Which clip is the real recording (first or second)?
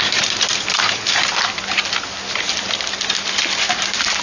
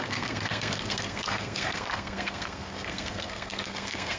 first